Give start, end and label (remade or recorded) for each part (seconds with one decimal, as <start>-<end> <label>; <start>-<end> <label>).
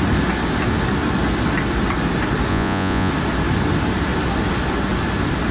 0.0-2.5 recorded; 2.5-3.1 remade; 3.1-5.5 recorded